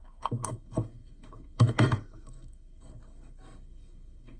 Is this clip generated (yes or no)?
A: yes